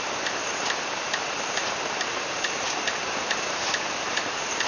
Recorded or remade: remade